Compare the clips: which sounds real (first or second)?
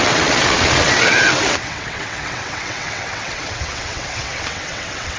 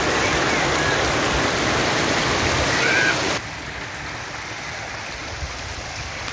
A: second